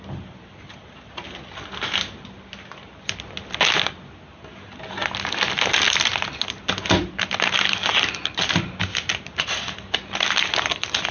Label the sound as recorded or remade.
recorded